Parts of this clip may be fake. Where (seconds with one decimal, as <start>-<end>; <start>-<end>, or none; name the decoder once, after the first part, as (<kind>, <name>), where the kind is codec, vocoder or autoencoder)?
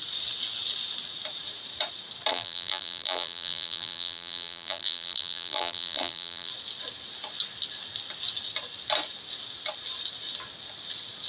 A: 2.3-6.5 (vocoder, BigVGAN v2)